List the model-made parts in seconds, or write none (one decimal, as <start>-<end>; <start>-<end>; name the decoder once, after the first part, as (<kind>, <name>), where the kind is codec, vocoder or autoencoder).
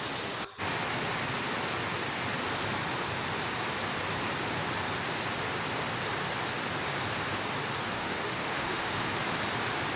7.9-9.1 (autoencoder, DAC-VAE)